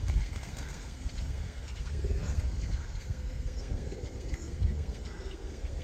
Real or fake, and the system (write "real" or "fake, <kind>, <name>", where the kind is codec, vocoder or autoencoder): fake, codec, SNAC